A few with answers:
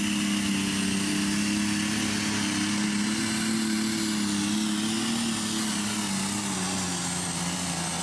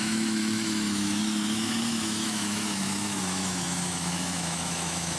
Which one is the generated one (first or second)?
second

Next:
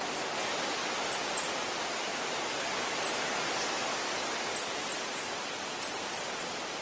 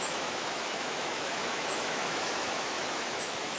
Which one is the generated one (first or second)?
second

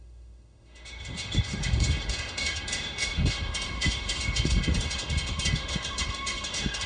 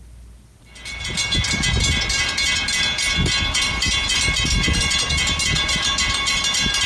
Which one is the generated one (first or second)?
first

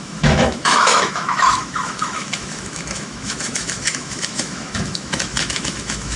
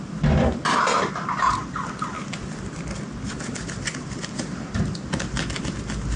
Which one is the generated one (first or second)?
first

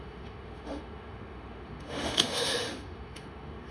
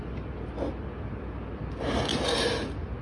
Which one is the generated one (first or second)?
first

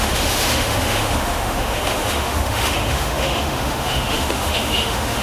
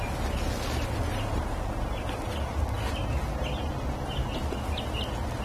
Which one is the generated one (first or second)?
first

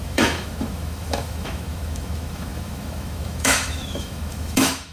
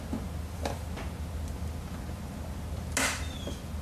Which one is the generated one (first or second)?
first